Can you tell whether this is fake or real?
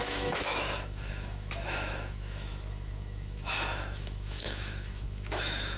fake